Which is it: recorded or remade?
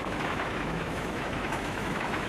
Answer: remade